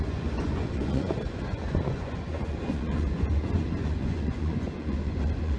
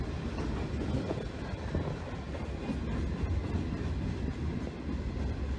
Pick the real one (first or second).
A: second